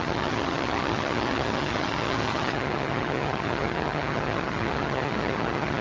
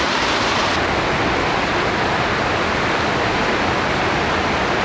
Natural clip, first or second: second